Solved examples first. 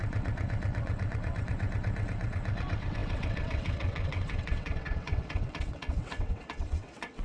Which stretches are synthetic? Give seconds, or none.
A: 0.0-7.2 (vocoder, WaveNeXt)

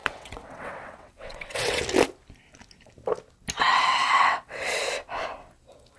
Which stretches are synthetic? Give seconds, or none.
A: 0.0-1.8 (vocoder, WaveNeXt); 3.6-4.8

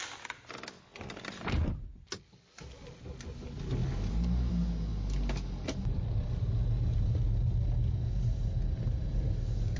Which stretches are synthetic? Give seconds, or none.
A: none

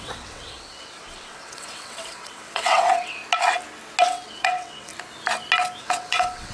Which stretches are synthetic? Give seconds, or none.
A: 0.0-3.2 (vocoder, WaveNeXt); 4.0-4.9; 5.8-6.5